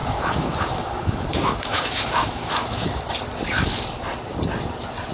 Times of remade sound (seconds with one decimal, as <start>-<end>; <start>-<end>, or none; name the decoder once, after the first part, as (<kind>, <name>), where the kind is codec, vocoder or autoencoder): 0.0-3.1 (autoencoder, DAC-VAE)